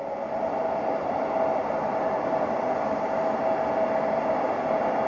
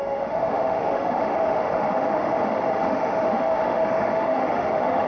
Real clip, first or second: first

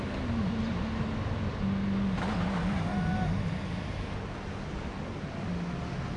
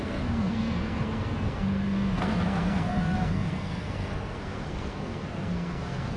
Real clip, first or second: first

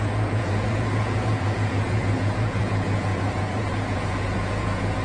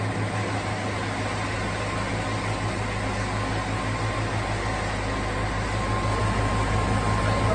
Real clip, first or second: second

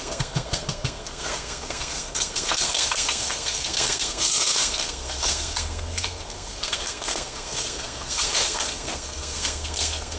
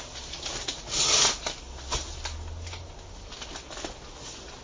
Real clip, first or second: second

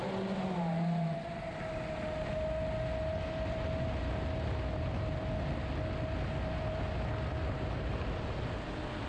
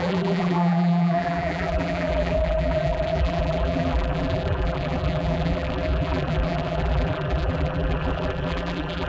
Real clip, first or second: first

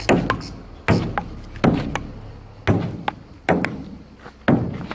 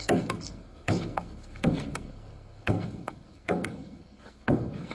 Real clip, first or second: first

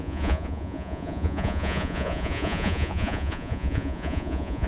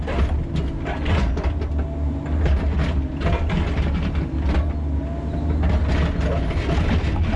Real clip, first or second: second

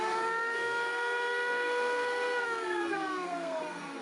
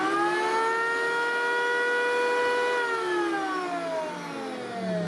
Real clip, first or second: second